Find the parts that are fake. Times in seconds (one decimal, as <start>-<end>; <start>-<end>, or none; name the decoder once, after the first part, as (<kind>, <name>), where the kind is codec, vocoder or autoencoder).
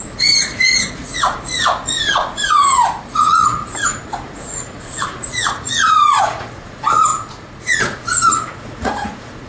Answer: 0.0-9.5 (vocoder, Vocos)